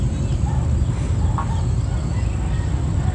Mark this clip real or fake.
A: real